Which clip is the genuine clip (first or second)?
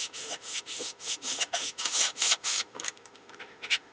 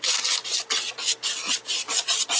second